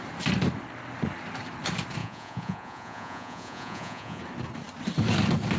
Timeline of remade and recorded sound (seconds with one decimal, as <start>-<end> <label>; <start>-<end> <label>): 0.0-2.0 recorded; 2.0-4.2 remade; 4.2-5.6 recorded